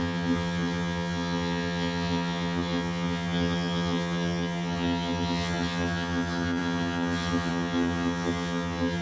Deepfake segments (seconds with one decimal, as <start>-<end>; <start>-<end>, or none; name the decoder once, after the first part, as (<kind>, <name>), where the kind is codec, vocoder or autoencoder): 0.0-9.0 (vocoder, HiFi-GAN)